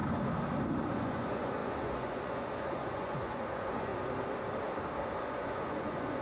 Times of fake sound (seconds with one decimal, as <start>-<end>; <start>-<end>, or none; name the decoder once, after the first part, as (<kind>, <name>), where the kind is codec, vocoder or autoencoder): 0.8-3.9 (vocoder, Vocos); 5.2-6.2